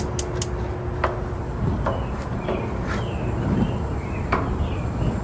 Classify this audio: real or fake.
real